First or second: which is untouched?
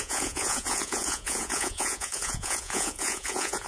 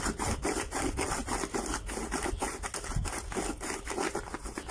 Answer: second